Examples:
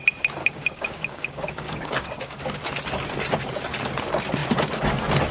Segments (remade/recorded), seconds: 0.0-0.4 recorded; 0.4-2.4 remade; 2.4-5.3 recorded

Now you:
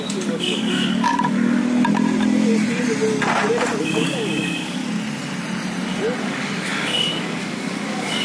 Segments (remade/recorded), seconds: 0.0-1.6 remade; 1.6-3.8 recorded; 3.8-4.8 remade; 4.8-6.2 recorded; 6.2-8.2 remade

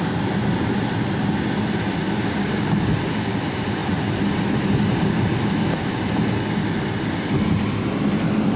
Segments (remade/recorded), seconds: 0.0-2.2 recorded; 2.2-2.9 remade; 2.9-8.6 recorded

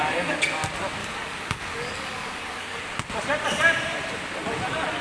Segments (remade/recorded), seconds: 0.0-1.0 recorded; 1.0-2.8 remade; 2.8-5.0 recorded